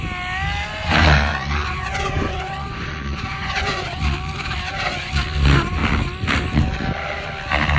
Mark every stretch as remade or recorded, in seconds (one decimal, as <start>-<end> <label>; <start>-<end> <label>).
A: 0.0-1.3 recorded; 1.3-4.0 remade; 4.0-7.8 recorded